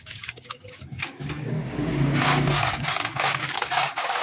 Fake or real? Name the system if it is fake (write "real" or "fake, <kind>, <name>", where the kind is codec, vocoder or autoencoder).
fake, codec, DAC